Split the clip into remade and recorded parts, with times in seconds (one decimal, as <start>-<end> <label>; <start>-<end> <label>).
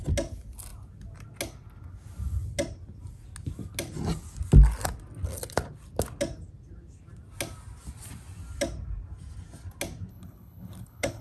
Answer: 0.0-10.1 recorded; 10.1-11.2 remade